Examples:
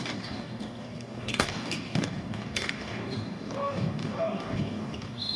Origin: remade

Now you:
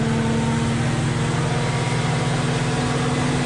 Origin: recorded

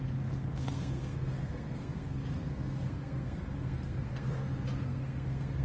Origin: remade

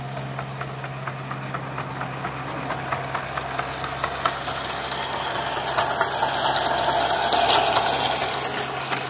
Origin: recorded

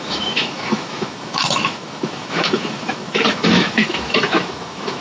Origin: remade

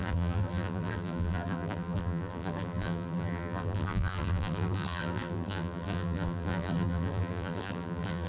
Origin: remade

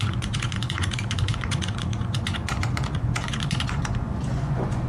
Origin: remade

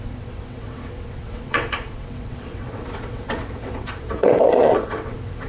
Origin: remade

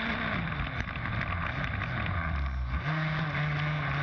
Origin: recorded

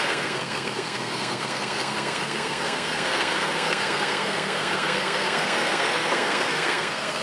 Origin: remade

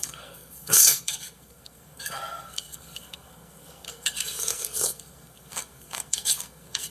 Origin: remade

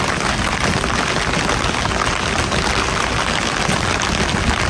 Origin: recorded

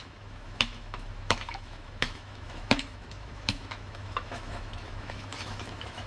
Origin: remade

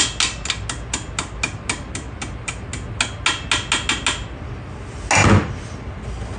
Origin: recorded